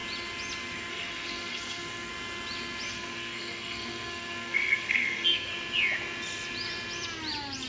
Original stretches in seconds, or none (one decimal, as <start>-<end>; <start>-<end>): 0.0-0.9; 2.1-2.9; 5.5-7.7